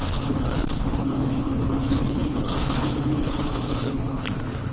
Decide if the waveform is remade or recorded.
remade